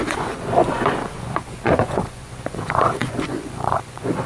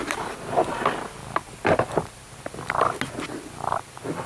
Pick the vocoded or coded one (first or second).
first